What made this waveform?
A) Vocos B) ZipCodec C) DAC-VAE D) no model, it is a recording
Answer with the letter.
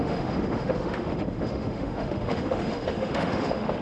C